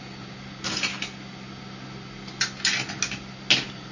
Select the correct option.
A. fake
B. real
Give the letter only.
B